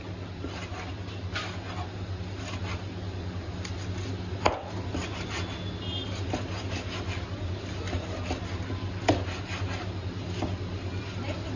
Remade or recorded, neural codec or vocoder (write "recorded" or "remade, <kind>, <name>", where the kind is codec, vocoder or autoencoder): recorded